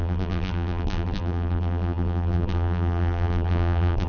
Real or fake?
fake